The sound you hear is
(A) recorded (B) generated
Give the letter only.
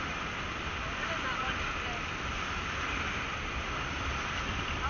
A